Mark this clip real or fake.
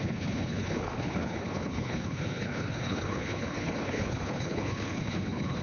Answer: fake